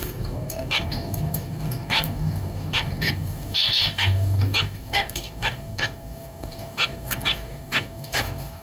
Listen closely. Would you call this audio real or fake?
fake